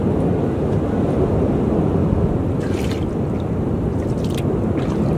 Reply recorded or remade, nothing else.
recorded